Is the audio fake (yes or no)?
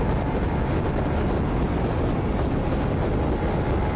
no